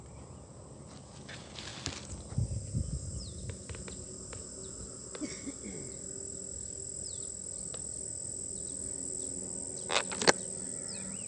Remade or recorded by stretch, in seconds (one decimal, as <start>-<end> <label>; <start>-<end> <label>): 0.0-11.3 recorded